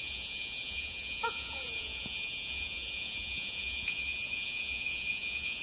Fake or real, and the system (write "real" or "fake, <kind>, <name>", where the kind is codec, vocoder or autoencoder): fake, vocoder, Vocos